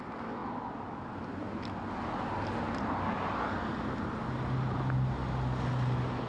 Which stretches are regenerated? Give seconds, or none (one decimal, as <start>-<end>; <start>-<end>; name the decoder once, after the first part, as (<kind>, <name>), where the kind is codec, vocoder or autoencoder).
none

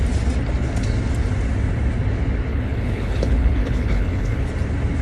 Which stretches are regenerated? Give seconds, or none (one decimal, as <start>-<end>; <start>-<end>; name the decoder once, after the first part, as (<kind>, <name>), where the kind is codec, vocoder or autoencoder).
2.5-4.5 (codec, HILCodec)